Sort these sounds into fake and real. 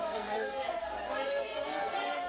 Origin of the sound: fake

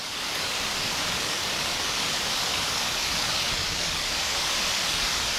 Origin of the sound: fake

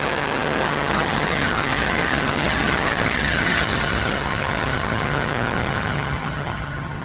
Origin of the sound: fake